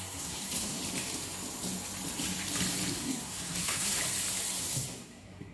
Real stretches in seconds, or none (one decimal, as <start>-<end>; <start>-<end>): 0.8-2.9; 4.0-4.6